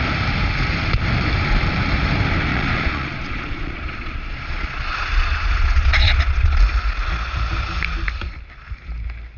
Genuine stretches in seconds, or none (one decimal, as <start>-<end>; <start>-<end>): 0.0-2.5; 6.6-9.4